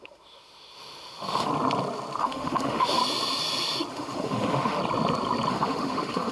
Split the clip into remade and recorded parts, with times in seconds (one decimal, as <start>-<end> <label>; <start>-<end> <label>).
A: 0.0-1.5 remade; 1.5-2.2 recorded; 2.2-3.0 remade; 3.0-3.9 recorded; 3.9-4.8 remade; 4.8-5.5 recorded; 5.5-6.3 remade